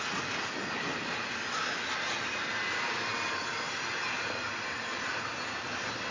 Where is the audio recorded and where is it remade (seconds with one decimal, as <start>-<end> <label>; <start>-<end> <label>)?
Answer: 0.0-6.1 recorded